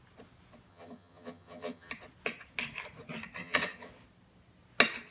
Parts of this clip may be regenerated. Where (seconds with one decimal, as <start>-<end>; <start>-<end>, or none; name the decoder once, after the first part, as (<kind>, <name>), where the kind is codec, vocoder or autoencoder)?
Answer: 0.7-1.9 (vocoder, HiFi-GAN); 3.4-3.9